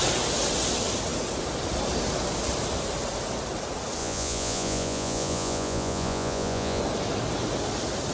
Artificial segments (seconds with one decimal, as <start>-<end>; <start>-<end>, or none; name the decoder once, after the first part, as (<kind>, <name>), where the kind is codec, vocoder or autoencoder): 4.0-6.8 (vocoder, Vocos)